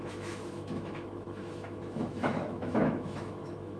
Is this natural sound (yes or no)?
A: no